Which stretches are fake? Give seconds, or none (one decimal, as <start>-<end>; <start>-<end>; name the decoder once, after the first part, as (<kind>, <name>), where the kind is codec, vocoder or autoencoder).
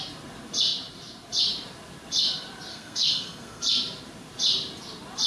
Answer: 2.7-3.6 (codec, SNAC)